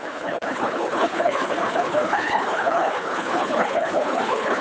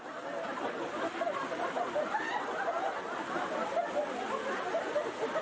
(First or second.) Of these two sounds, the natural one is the second